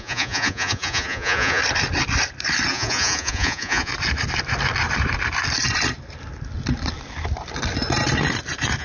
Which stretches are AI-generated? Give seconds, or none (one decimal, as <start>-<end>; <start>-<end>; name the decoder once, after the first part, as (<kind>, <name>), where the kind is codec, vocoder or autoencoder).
0.0-1.6 (vocoder, Vocos); 2.7-3.9